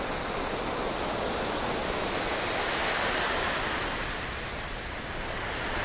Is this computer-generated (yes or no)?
no